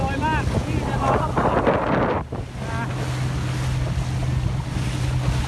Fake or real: real